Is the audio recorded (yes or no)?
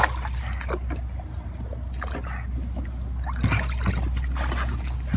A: yes